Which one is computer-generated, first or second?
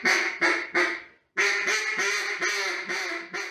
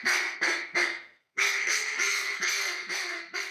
second